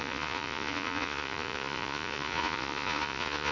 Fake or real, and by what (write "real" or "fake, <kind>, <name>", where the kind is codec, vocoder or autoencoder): fake, vocoder, Vocos